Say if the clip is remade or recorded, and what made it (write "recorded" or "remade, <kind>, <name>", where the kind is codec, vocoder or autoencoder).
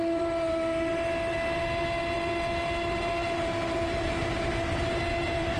recorded